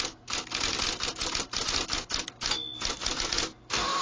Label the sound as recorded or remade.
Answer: recorded